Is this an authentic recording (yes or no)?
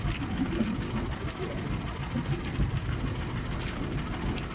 yes